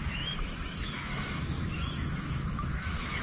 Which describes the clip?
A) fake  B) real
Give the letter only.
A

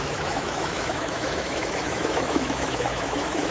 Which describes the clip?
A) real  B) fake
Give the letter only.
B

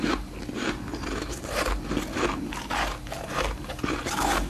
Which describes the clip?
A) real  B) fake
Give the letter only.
A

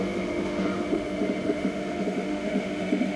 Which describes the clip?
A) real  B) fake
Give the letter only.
B